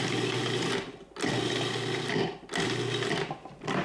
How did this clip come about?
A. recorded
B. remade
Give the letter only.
A